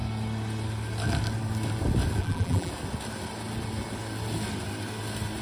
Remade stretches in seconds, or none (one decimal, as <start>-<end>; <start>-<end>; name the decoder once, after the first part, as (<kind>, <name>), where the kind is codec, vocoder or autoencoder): 2.2-2.7 (vocoder, BigVGAN v2)